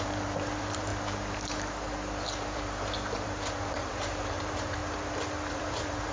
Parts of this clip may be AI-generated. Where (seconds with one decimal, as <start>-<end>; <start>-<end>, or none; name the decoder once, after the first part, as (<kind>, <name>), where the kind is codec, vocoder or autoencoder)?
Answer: 0.0-4.8 (vocoder, BigVGAN v2); 5.5-6.1